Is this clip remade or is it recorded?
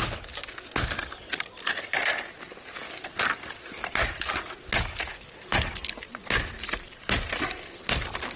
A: recorded